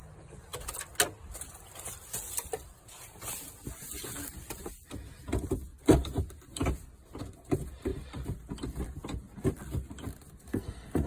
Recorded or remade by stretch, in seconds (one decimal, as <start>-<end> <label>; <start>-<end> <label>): 0.0-10.5 recorded; 10.5-11.1 remade